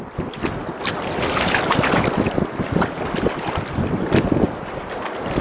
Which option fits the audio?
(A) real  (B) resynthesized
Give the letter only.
A